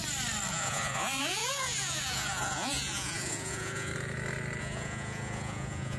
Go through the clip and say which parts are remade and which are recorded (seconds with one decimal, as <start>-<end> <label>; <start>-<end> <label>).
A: 0.0-0.5 recorded; 0.5-3.9 remade; 3.9-4.6 recorded; 4.6-6.0 remade